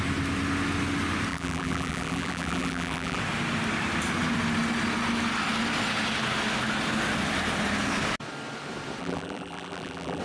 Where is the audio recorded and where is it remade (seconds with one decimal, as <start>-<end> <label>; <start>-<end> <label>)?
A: 0.0-1.3 recorded; 1.3-3.2 remade; 3.2-9.0 recorded; 9.0-10.2 remade